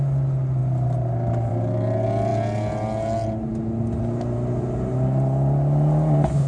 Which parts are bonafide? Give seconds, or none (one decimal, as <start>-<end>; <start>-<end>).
0.0-6.5